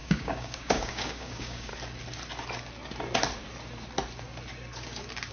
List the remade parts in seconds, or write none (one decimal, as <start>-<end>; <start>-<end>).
0.0-1.7